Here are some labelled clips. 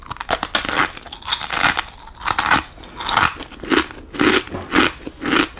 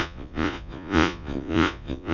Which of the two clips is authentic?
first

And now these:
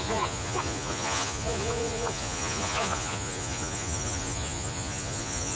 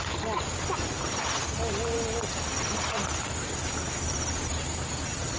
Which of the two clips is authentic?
second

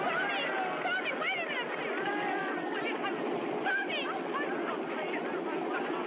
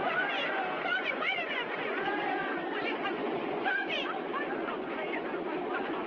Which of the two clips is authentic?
first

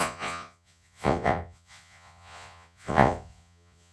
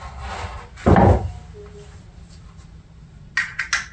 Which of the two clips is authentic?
second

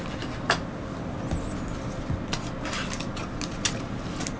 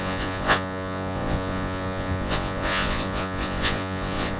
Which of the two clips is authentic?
first